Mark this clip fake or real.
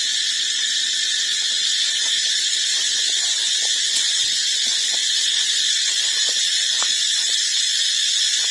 fake